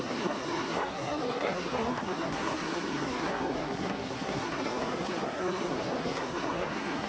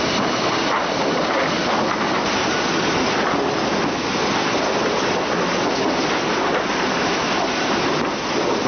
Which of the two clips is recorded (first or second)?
second